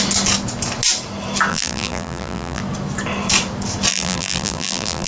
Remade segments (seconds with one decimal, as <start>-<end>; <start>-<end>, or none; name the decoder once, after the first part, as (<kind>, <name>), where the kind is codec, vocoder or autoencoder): 1.5-2.6 (vocoder, BigVGAN v2); 3.9-5.1